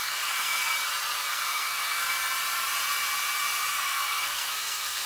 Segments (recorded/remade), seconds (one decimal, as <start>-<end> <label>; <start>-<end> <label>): 0.0-0.7 remade; 0.7-1.3 recorded; 1.3-2.2 remade; 2.2-3.7 recorded; 3.7-5.1 remade